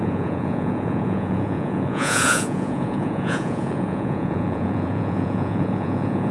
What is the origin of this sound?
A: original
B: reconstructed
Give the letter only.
B